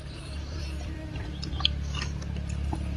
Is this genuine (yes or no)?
no